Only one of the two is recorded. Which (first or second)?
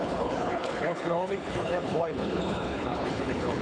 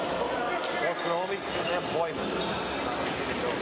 second